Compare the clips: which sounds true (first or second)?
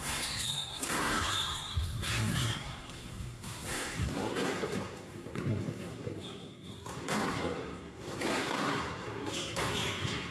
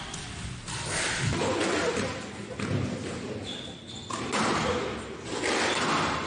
second